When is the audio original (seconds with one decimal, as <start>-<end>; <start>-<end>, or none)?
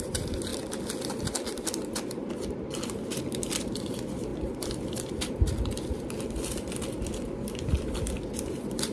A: 0.5-3.2